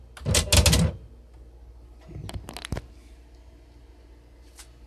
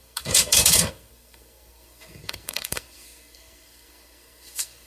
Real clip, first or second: first